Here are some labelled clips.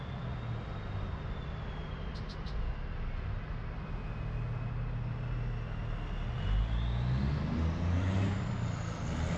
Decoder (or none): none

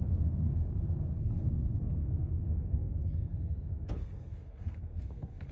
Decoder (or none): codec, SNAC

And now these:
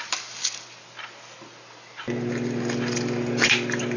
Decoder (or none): none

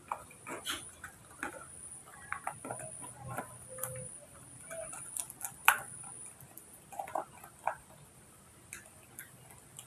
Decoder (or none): none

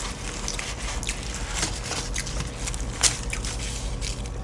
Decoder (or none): none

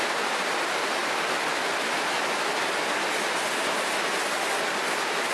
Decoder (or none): none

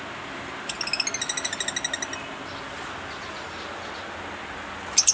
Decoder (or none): none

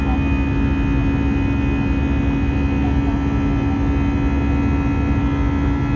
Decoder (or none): none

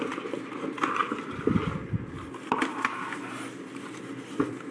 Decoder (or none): none